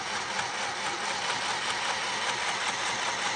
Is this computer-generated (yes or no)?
no